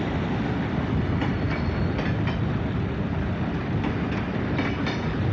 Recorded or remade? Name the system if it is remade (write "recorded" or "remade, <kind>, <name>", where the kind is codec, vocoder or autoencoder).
recorded